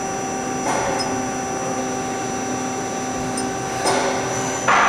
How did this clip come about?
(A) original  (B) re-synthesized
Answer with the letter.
A